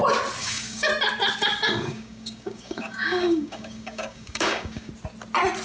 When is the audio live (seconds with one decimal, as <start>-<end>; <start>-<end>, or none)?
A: 0.0-0.4; 0.9-1.5; 4.9-5.6